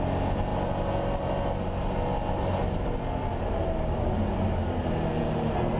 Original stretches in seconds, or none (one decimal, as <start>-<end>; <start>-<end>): 0.0-5.8